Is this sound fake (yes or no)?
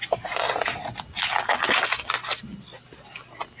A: no